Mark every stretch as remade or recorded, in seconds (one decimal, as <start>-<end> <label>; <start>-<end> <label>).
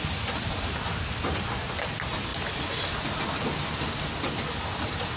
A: 0.0-5.2 recorded